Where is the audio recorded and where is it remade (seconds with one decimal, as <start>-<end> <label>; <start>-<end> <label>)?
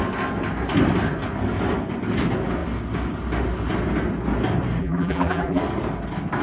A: 0.0-4.8 recorded; 4.8-5.6 remade; 5.6-6.4 recorded